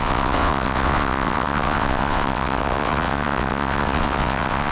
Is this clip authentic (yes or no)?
no